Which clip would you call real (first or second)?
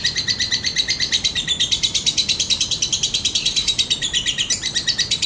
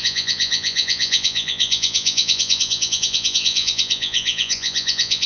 first